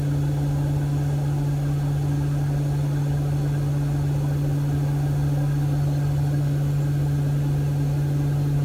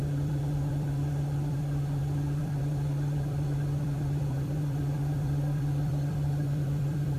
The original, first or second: first